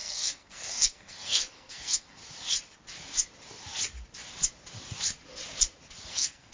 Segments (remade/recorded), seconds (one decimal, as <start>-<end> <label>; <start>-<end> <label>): 0.0-2.2 remade; 2.2-6.1 recorded; 6.1-6.5 remade